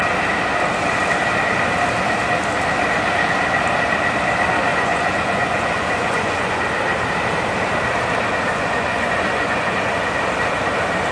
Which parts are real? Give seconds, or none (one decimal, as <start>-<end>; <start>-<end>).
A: 0.0-4.7; 6.6-8.5; 10.2-11.1